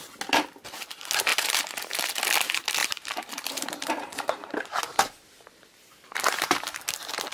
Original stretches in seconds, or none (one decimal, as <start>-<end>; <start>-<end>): 0.0-1.3; 2.1-2.8